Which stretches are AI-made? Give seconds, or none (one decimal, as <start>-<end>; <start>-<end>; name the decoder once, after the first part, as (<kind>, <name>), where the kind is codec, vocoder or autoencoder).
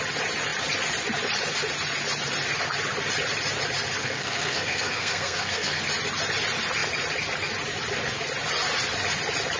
4.0-5.8 (codec, SNAC)